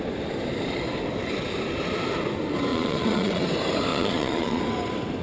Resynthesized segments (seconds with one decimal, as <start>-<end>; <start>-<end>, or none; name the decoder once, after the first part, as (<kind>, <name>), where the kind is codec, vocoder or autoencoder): 2.7-3.5 (vocoder, Vocos); 3.9-4.6